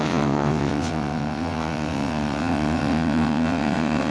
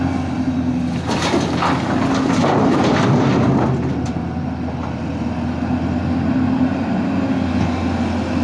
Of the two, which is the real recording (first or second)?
second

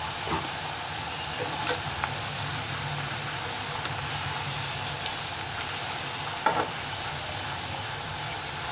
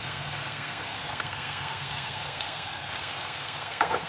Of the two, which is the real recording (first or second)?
first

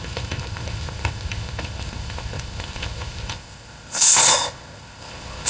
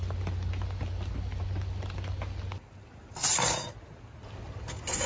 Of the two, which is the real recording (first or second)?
second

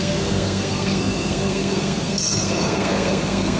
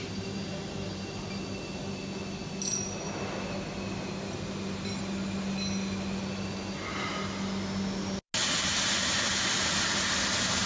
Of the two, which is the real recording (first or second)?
second